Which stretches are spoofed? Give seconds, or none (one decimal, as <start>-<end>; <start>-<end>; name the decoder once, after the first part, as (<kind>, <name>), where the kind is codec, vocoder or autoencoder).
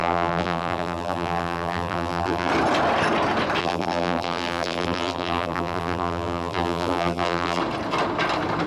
0.0-2.5 (vocoder, BigVGAN v2); 3.6-7.6